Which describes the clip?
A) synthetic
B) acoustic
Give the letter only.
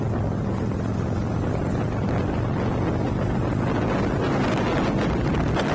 B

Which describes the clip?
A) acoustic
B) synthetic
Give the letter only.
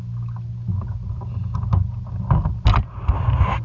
A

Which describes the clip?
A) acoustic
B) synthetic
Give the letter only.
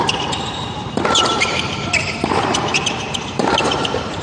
B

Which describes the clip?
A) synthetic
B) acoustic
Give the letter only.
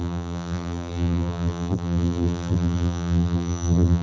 A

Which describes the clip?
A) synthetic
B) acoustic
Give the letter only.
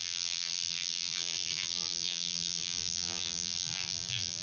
A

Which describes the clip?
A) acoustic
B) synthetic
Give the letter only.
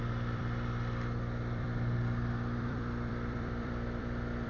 B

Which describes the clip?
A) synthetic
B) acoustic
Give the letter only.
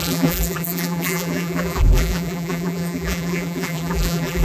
A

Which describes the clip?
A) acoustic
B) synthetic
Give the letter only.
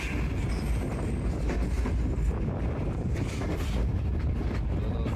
A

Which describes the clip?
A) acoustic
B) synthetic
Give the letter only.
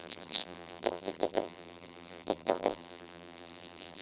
B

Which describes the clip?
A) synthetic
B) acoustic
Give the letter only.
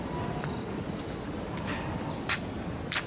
B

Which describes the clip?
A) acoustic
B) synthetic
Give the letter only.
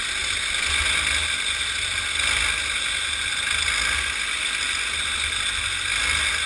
A